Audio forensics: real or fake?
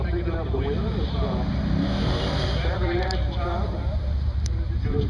fake